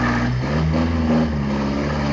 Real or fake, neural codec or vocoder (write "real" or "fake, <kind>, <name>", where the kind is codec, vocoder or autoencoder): real